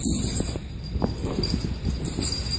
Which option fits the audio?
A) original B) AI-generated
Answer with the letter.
A